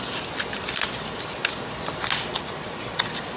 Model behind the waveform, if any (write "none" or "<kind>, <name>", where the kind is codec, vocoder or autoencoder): none